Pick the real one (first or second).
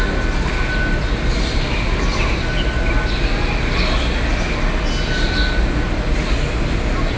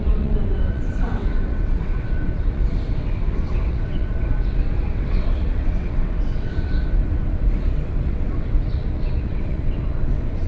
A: first